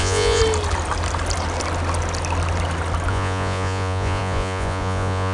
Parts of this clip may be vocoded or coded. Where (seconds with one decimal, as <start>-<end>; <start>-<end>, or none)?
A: 0.0-0.4; 3.1-5.3